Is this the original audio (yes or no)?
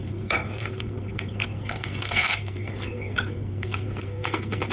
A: no